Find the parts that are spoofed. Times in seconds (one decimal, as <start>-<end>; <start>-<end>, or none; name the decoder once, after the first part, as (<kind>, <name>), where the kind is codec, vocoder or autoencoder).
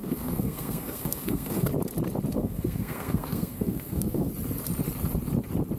0.0-1.7 (codec, SNAC); 2.3-4.3